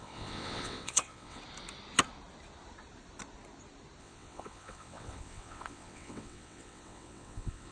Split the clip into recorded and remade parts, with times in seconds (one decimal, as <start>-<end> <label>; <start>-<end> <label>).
0.0-1.4 remade; 1.4-4.0 recorded; 4.0-7.7 remade